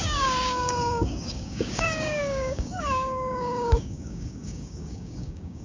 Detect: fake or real fake